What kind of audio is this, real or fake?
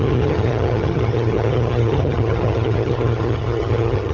fake